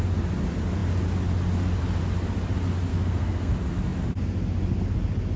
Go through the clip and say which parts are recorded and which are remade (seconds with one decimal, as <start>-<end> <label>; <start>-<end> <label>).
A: 0.0-2.9 recorded; 2.9-3.5 remade; 3.5-5.4 recorded